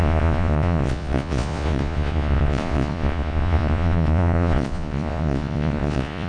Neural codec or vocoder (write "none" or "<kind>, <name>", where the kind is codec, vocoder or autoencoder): vocoder, Vocos